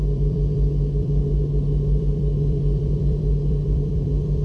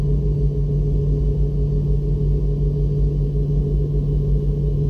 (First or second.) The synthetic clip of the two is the first